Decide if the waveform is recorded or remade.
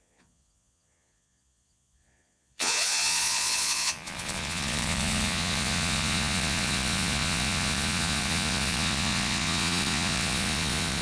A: remade